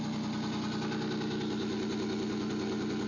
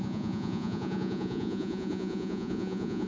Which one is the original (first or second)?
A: first